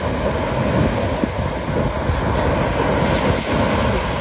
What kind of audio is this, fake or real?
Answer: real